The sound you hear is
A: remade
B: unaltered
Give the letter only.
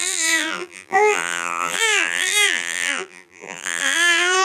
A